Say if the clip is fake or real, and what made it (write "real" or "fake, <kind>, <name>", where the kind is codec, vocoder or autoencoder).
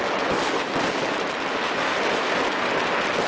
real